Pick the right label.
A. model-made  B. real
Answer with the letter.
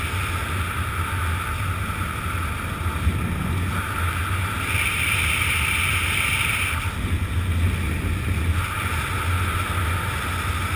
B